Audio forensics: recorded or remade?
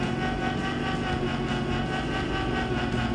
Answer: recorded